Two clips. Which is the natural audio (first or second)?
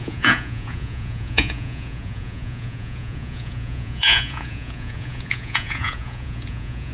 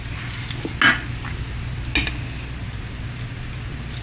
second